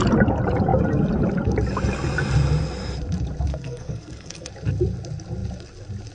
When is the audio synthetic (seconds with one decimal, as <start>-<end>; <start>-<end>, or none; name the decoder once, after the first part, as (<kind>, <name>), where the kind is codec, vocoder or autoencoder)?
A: 3.5-4.5 (codec, SNAC)